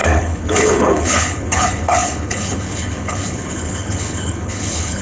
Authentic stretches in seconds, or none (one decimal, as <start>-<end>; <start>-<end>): none